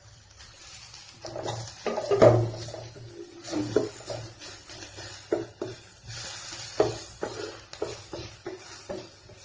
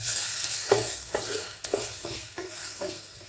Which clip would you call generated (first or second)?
second